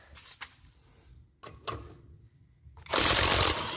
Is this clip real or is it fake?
real